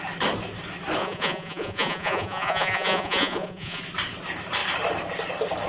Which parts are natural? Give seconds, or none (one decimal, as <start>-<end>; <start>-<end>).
0.0-1.0; 3.8-5.7